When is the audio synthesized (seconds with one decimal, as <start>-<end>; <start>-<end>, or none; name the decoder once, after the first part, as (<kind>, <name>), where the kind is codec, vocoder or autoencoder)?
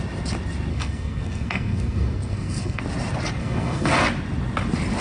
0.7-2.8 (codec, SNAC); 3.4-3.9